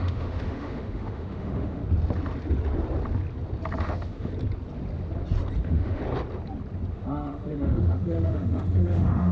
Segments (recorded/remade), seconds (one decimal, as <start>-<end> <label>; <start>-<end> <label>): 0.0-1.8 remade; 1.8-3.8 recorded; 3.8-4.3 remade; 4.3-5.6 recorded; 5.6-6.0 remade; 6.0-6.9 recorded; 6.9-9.3 remade